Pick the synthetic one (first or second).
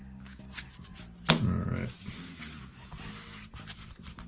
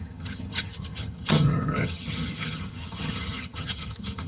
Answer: second